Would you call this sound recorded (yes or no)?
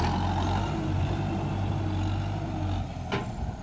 yes